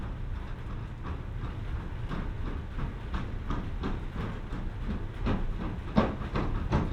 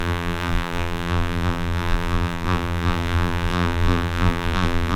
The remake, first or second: second